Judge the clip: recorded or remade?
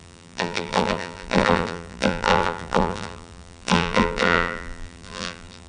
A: remade